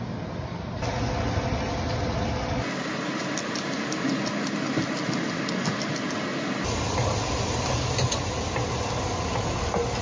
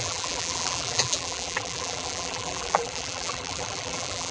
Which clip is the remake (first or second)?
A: second